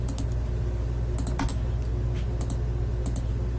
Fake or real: real